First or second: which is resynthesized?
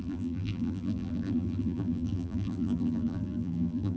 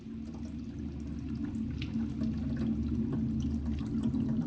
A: first